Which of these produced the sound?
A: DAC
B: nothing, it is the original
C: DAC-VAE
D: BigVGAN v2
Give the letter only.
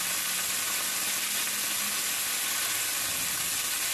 B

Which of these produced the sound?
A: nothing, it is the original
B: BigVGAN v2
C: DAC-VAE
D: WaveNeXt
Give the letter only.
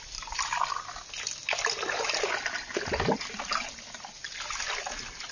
A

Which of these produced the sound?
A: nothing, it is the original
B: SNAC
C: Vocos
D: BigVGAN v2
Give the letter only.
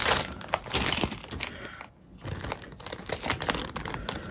A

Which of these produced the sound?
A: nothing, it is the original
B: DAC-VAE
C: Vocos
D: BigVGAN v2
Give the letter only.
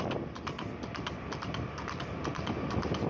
A